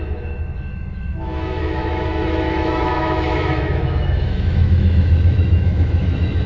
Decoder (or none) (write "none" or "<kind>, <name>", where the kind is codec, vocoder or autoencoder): autoencoder, DAC-VAE